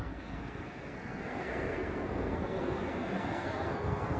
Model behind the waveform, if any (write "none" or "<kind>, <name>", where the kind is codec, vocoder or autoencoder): codec, SNAC